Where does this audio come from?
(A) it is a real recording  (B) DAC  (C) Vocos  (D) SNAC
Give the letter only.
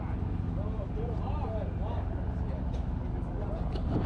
A